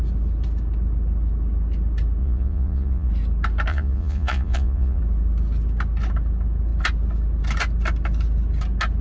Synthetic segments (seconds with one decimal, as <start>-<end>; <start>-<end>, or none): 2.2-3.1; 3.7-5.0